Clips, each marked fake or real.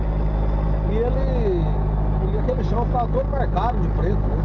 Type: real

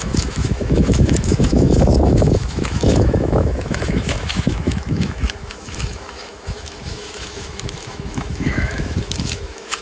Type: fake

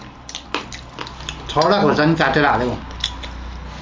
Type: real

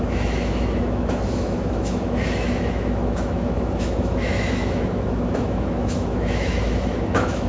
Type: fake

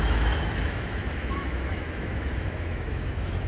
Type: fake